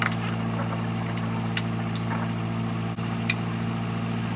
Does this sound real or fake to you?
real